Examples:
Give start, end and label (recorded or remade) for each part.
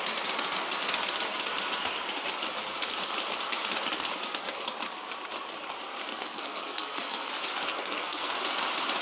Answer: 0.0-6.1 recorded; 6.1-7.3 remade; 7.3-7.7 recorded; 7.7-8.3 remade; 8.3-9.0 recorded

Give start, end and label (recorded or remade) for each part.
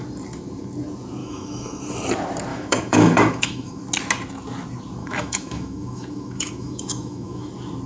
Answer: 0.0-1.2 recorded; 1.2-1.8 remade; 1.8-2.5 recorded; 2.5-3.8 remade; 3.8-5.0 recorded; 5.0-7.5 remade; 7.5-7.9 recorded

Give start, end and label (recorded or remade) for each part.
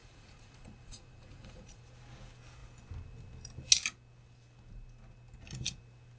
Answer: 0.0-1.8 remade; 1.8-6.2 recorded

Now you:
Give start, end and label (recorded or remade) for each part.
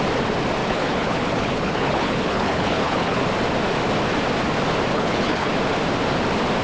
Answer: 0.0-0.6 recorded; 0.6-3.2 remade; 3.2-4.9 recorded; 4.9-5.5 remade; 5.5-6.6 recorded